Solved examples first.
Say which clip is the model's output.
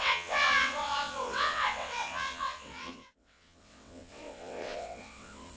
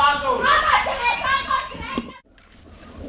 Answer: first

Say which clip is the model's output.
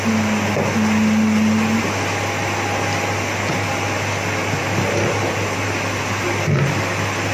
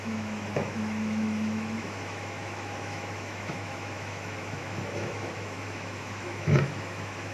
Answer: second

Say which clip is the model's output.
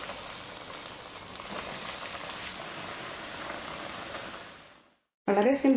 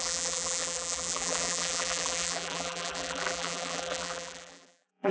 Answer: second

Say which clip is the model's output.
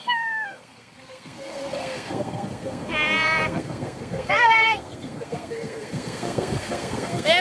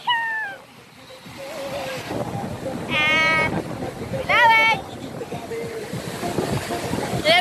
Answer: first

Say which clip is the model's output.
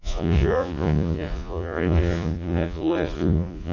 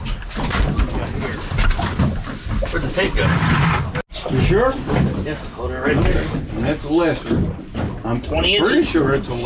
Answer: first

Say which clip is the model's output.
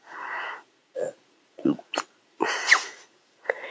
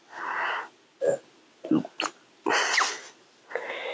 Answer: first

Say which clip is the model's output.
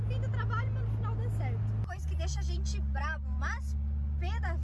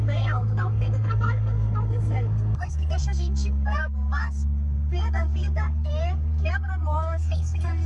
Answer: second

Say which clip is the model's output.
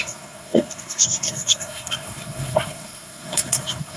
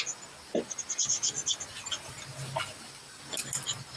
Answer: first